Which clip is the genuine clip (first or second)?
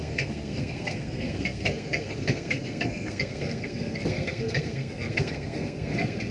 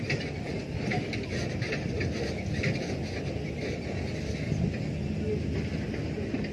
second